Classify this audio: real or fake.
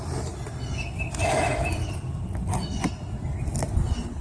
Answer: real